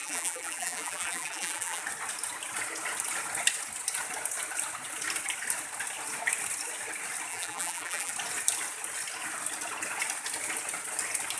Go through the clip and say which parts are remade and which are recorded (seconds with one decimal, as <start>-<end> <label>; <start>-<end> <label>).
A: 0.0-1.8 remade; 1.8-7.3 recorded; 7.3-8.1 remade; 8.1-11.4 recorded